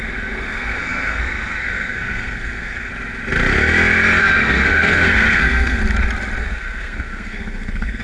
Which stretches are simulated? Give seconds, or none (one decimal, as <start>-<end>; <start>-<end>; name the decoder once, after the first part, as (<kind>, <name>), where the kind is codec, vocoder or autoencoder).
0.0-2.9 (codec, SNAC); 4.2-5.8; 6.4-8.0

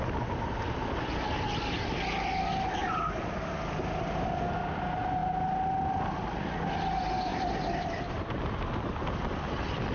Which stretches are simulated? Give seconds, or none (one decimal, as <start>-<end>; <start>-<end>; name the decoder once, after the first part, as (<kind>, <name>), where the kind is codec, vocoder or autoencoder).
none

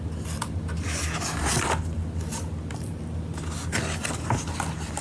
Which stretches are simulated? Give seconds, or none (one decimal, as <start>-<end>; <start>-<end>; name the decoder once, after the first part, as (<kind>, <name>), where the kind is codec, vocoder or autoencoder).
none

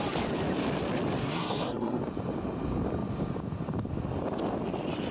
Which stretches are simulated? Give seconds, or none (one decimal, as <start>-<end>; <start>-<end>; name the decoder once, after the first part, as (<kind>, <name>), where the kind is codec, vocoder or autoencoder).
1.2-2.0 (codec, SNAC)

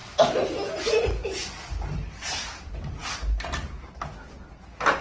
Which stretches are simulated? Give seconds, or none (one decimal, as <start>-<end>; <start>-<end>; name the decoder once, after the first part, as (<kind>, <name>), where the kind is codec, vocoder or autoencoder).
none

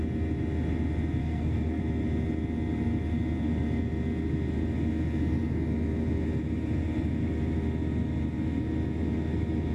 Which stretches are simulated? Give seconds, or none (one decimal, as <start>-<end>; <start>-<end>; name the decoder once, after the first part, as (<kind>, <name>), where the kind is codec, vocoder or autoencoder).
1.2-1.8 (codec, SNAC)